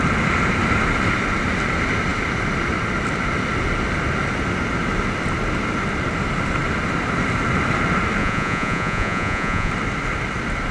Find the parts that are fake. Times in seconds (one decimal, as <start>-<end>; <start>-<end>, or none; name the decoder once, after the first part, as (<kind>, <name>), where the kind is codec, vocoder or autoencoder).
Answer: 8.2-9.7 (vocoder, Vocos)